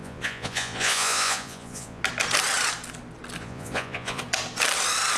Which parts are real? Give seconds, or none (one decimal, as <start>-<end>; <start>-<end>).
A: 2.0-3.4; 4.2-5.2